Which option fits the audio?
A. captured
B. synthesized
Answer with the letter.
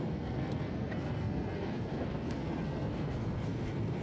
B